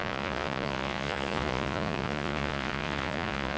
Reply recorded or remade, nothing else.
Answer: remade